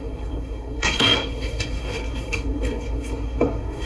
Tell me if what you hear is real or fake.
fake